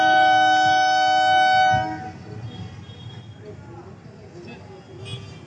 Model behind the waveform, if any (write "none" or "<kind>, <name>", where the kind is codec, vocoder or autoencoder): none